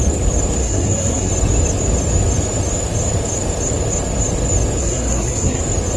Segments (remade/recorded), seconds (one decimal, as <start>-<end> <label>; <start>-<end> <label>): 0.0-0.6 recorded; 0.6-1.3 remade; 1.3-4.8 recorded; 4.8-5.6 remade; 5.6-6.0 recorded